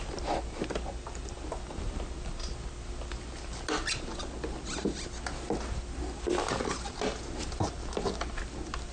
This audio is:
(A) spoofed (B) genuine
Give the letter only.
B